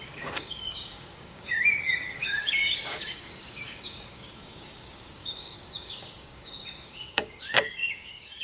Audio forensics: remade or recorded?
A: remade